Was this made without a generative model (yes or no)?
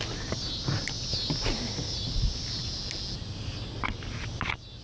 yes